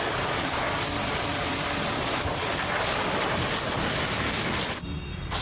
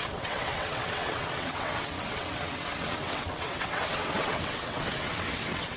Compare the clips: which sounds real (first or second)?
first